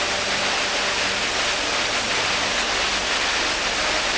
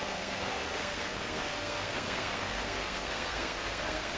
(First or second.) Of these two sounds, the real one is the first